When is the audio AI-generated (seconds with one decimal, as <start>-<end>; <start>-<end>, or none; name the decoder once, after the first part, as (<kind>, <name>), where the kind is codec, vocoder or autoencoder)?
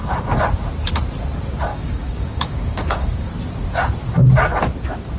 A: 1.7-3.3 (codec, DAC)